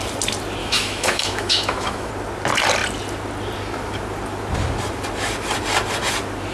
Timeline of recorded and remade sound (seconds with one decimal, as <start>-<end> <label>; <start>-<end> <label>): 0.0-0.6 recorded; 0.6-2.1 remade; 2.1-6.5 recorded